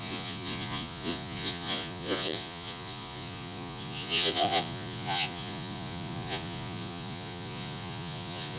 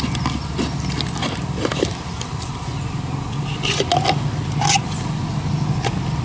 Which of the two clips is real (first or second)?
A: second